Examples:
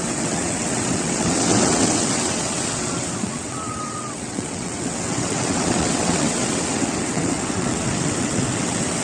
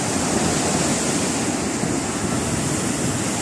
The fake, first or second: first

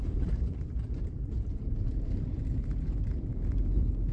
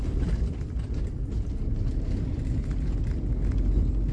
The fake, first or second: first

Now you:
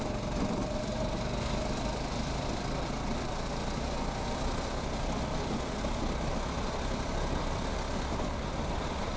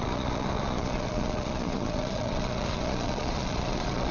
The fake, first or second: second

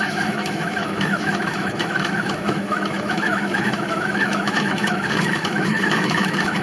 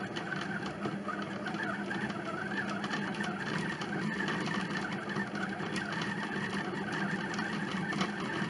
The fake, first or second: first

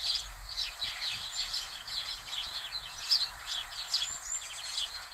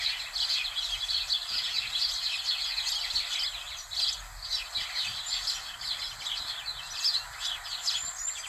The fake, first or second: first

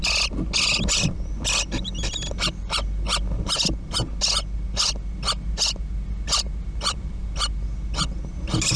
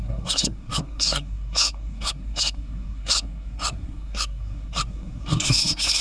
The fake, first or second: second